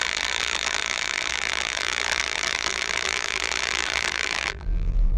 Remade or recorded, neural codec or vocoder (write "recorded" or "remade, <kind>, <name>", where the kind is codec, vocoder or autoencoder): remade, vocoder, BigVGAN v2